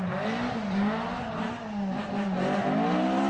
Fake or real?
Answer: real